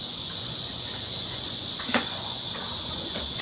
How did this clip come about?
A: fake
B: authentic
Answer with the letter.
A